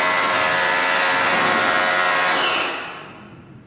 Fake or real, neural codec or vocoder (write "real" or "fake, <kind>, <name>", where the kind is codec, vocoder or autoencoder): real